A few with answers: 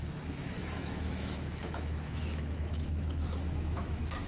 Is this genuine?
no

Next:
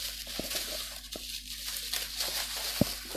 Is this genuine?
yes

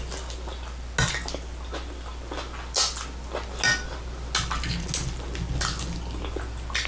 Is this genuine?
yes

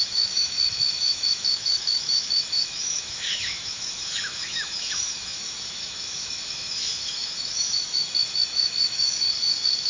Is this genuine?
no